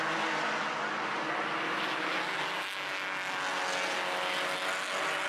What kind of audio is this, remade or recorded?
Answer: recorded